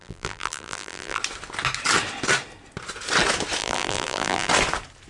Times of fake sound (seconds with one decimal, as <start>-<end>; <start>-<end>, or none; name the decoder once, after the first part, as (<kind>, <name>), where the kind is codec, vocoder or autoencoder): 0.0-1.2 (vocoder, BigVGAN v2); 3.6-4.5